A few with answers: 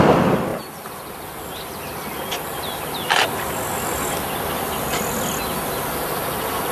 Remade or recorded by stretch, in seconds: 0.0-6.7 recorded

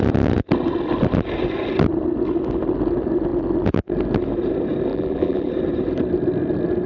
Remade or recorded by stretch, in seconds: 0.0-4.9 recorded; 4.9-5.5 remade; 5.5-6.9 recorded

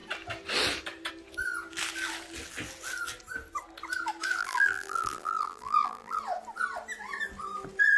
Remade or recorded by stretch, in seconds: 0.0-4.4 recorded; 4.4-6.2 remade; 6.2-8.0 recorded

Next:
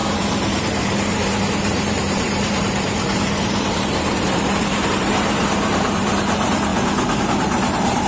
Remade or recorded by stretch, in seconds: 0.0-6.7 remade; 6.7-7.2 recorded; 7.2-8.1 remade

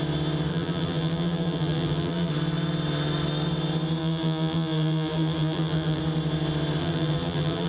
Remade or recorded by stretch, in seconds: 0.0-0.5 recorded; 0.5-2.3 remade; 2.3-4.0 recorded; 4.0-6.0 remade; 6.0-6.8 recorded; 6.8-7.7 remade

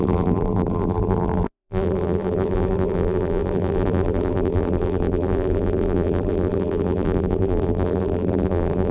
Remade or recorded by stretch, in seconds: 0.0-8.9 remade

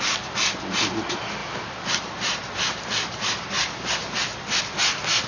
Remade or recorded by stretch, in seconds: 0.0-1.4 recorded; 1.4-4.6 remade; 4.6-5.3 recorded

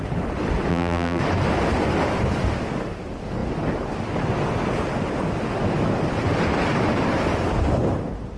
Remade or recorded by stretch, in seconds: 0.0-0.7 recorded; 0.7-1.2 remade; 1.2-8.4 recorded